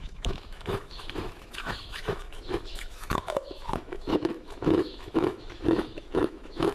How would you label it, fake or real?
fake